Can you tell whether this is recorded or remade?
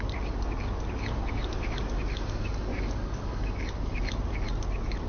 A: recorded